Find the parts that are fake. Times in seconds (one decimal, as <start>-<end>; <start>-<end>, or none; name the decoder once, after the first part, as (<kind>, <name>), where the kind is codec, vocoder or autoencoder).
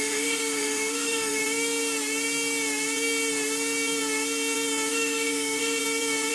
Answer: 0.0-1.4 (autoencoder, DAC-VAE); 4.9-5.8